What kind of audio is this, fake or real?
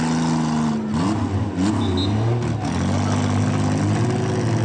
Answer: real